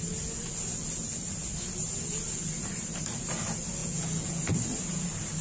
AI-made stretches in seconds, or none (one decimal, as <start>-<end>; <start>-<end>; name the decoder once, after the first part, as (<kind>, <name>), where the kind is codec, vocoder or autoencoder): 3.8-4.4 (vocoder, Vocos)